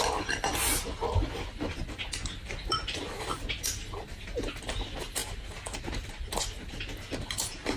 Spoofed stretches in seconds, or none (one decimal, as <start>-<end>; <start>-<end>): none